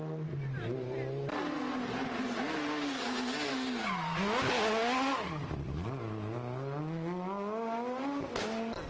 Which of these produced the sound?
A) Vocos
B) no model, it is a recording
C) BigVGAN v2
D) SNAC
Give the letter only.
B